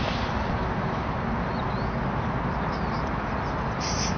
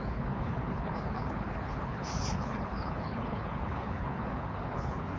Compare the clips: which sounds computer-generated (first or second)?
second